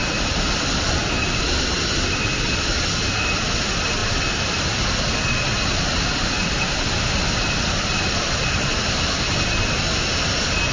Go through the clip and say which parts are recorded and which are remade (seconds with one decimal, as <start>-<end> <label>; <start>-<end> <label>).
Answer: 0.0-1.4 remade; 1.4-4.0 recorded; 4.0-7.9 remade; 7.9-10.7 recorded